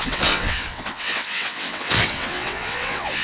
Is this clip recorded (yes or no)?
no